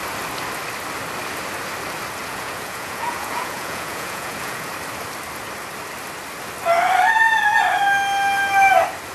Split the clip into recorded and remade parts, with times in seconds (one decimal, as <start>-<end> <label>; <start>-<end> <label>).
0.0-2.2 recorded; 2.2-4.7 remade; 4.7-9.1 recorded